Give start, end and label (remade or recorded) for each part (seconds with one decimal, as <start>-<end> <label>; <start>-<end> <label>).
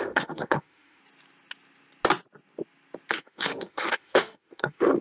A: 0.0-1.0 remade; 1.0-3.1 recorded; 3.1-5.0 remade